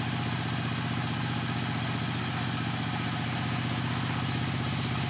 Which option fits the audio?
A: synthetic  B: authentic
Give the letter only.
B